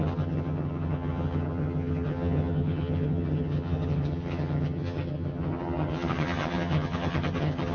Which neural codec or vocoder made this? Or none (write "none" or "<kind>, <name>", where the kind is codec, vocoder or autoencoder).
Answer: vocoder, HiFi-GAN